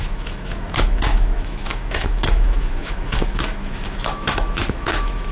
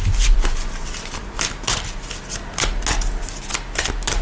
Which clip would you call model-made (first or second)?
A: first